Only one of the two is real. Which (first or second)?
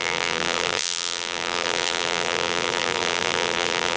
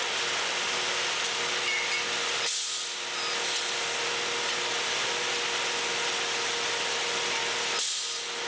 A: second